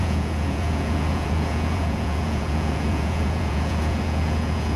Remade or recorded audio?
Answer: remade